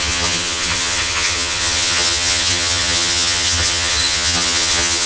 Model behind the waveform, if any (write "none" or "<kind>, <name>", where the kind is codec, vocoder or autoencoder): vocoder, HiFi-GAN